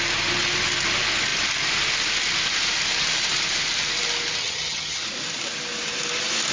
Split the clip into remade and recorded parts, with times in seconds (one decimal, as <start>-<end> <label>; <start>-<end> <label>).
0.0-4.4 recorded; 4.4-5.0 remade; 5.0-6.5 recorded